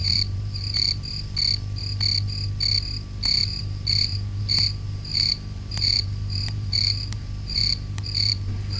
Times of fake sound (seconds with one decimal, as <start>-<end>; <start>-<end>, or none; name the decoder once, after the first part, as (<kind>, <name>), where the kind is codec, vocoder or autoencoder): 0.0-1.0 (vocoder, BigVGAN v2); 3.4-4.4; 5.1-8.8